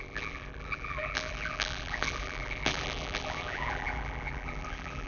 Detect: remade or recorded remade